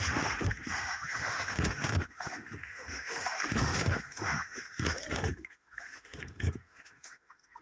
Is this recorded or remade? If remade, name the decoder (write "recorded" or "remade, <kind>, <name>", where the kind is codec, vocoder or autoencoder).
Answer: remade, autoencoder, DAC-VAE